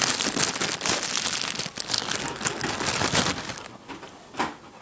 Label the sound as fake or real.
real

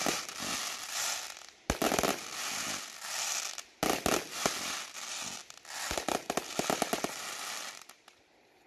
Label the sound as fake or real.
real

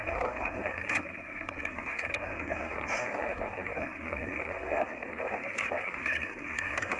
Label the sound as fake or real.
fake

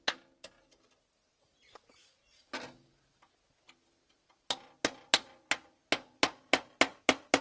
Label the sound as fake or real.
real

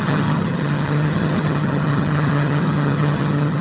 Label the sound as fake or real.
fake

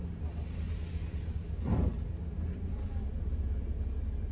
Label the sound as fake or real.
real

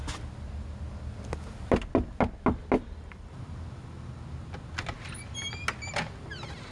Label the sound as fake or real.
real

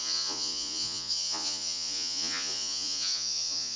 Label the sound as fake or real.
fake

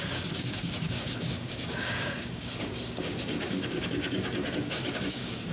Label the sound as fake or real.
fake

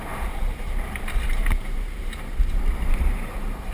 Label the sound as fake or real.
fake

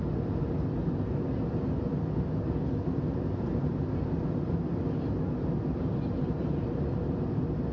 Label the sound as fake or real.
real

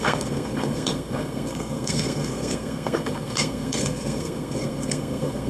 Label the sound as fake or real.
fake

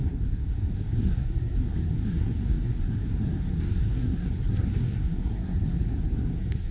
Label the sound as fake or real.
fake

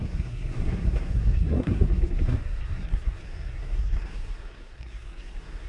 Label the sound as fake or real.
fake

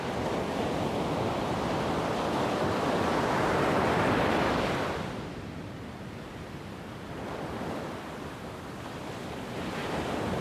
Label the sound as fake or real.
fake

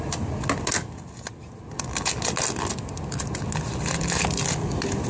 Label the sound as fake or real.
real